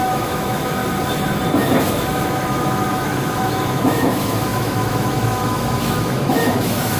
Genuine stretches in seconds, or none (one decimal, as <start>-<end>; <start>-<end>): 0.8-1.8